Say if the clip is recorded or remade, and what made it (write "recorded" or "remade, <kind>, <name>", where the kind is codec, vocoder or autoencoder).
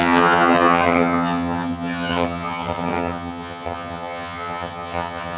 remade, vocoder, HiFi-GAN